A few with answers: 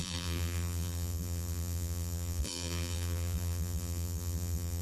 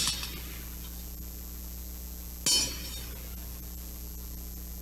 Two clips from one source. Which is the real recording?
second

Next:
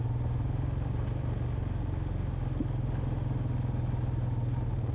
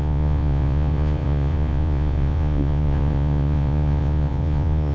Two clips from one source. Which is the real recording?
first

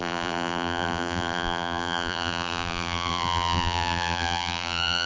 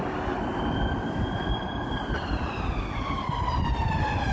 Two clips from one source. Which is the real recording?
second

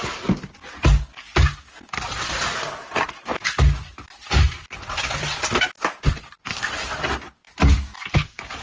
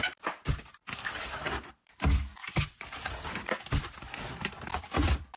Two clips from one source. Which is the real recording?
first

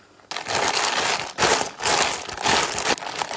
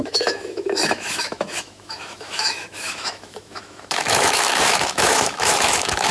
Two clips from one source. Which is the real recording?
first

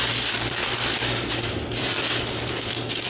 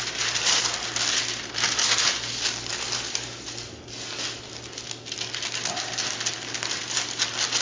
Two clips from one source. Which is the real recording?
second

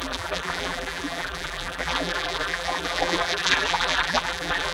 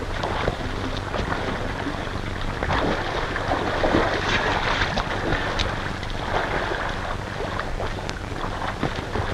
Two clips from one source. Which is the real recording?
second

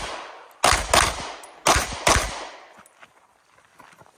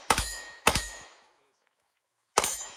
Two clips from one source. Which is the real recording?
first